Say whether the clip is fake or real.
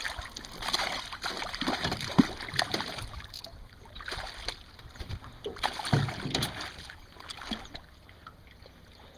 real